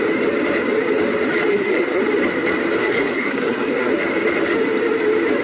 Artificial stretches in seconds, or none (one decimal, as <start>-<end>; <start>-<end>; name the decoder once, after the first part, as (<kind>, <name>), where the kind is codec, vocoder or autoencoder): 1.5-2.0 (codec, SNAC); 2.8-3.9